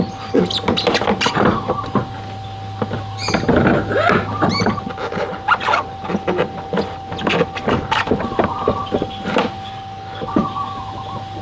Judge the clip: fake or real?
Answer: real